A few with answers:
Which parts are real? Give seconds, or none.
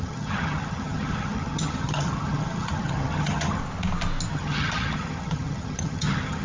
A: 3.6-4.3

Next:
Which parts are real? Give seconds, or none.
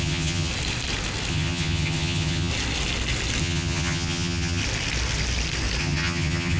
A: 0.5-1.3; 2.5-3.4; 4.6-5.8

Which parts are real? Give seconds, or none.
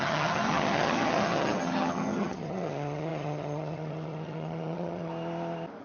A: 5.1-5.8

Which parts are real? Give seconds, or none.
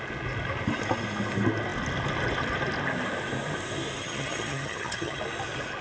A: 0.0-4.0; 5.2-5.8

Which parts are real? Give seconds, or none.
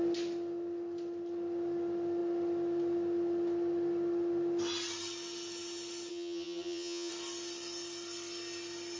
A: 0.0-6.1; 7.1-9.0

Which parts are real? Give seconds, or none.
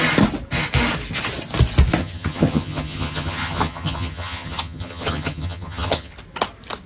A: 0.0-2.0; 6.1-6.9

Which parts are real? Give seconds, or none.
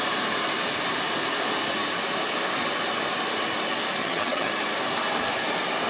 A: 0.0-4.0; 4.5-5.9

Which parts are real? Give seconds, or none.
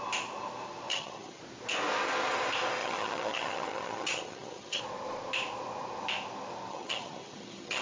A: 0.0-0.9; 1.4-2.8; 4.8-6.7